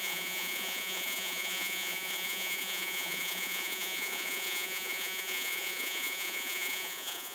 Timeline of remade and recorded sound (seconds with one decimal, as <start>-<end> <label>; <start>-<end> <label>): 0.0-7.3 remade